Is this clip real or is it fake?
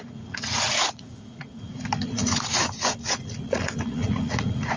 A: fake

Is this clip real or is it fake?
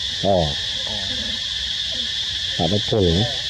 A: real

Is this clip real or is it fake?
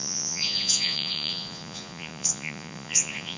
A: fake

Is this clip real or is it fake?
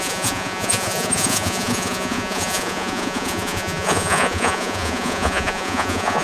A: fake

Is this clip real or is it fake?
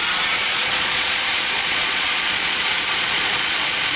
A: fake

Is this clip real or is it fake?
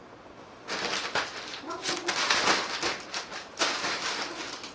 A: real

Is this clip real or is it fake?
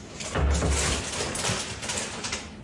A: real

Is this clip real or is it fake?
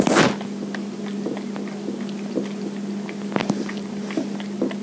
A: real